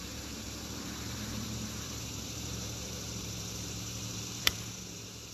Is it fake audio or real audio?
fake